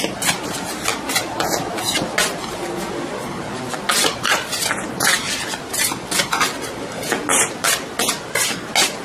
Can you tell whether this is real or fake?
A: real